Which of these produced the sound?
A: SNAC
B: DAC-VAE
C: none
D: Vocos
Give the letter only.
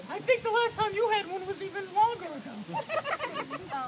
C